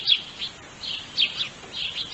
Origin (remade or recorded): recorded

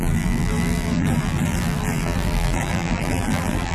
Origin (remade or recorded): remade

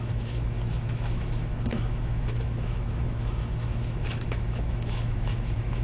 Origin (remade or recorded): remade